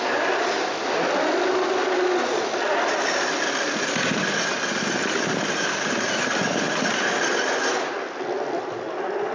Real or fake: real